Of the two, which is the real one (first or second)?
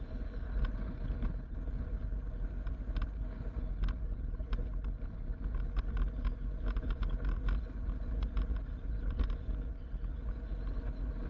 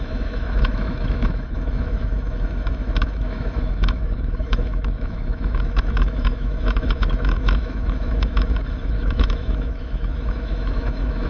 first